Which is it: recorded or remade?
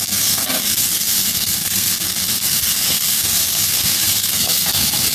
remade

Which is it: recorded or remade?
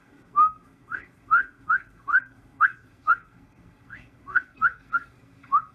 remade